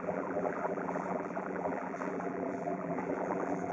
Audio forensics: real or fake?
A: fake